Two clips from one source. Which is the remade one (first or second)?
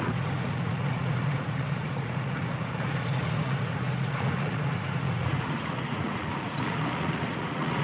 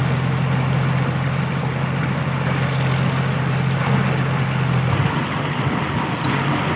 first